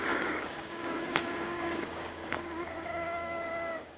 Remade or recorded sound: remade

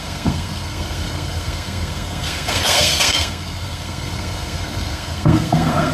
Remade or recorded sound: remade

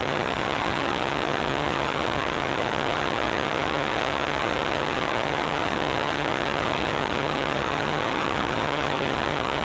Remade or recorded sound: remade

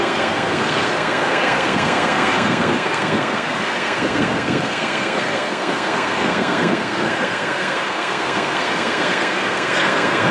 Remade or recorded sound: remade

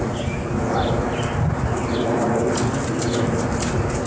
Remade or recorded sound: recorded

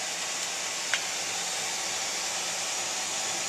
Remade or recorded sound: recorded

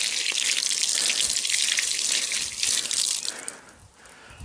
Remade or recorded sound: recorded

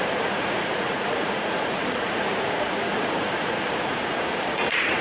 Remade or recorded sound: remade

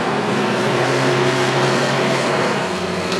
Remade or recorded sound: remade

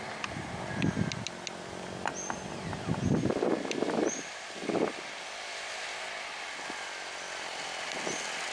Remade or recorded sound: recorded